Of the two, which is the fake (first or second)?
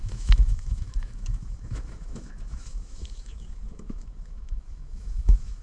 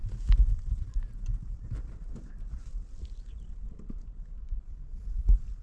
first